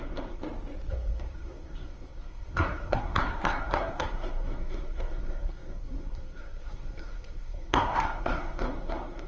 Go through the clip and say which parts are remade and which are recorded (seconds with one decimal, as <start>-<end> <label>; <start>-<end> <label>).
0.0-0.4 remade; 0.4-0.9 recorded; 0.9-9.3 remade